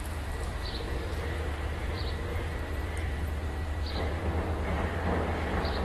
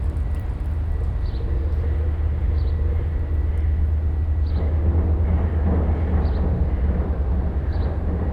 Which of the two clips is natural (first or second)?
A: second